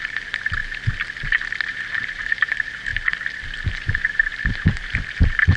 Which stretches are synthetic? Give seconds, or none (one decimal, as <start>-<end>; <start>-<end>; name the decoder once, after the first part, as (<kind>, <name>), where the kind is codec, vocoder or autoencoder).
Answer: 0.0-0.6 (vocoder, BigVGAN v2); 1.7-2.9; 3.7-5.6